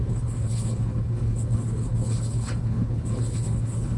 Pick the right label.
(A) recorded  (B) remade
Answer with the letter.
B